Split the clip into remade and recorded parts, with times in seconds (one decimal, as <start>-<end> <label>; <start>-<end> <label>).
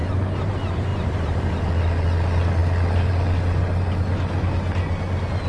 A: 0.0-0.5 remade; 0.5-0.9 recorded; 0.9-1.7 remade; 1.7-5.5 recorded